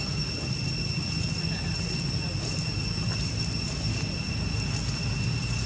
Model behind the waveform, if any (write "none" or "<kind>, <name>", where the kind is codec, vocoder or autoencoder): none